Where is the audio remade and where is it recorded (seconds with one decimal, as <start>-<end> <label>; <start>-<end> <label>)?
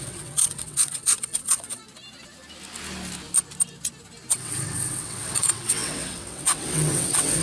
0.0-1.8 remade; 1.8-4.3 recorded; 4.3-7.4 remade